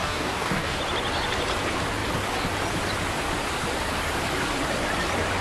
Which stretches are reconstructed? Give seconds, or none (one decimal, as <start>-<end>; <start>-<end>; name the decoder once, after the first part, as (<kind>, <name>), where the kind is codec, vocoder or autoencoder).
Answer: 0.0-0.8 (codec, DAC)